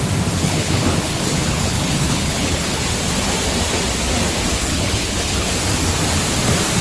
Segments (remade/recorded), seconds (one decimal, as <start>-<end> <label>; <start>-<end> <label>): 0.0-0.4 recorded; 0.4-2.8 remade; 2.8-4.5 recorded; 4.5-5.5 remade; 5.5-6.8 recorded